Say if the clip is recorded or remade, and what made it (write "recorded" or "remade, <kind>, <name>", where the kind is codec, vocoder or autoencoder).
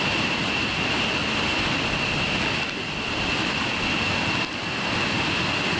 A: recorded